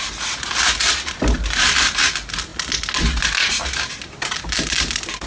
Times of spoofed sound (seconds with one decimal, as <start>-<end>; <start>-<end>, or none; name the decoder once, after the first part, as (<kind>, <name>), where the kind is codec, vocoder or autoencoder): none